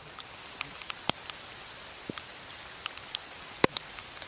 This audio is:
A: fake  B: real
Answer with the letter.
B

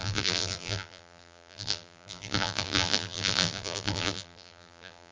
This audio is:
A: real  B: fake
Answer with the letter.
B